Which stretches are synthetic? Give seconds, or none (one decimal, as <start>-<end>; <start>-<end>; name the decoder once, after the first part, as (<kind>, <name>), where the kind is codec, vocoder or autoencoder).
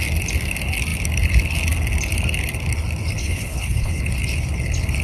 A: 3.2-4.0 (codec, HILCodec)